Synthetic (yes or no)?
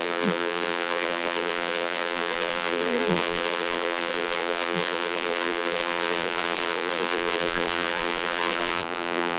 yes